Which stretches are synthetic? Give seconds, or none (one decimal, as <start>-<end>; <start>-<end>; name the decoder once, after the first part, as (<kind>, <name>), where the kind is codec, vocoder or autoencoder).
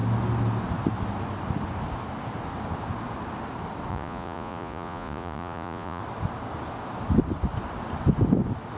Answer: 3.9-6.0 (vocoder, Vocos)